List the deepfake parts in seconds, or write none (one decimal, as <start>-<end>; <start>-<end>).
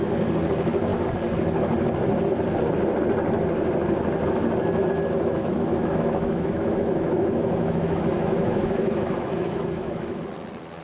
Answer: 5.4-10.2